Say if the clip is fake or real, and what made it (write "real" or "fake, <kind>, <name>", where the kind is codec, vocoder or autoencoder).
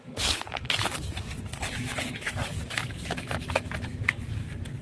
fake, codec, DAC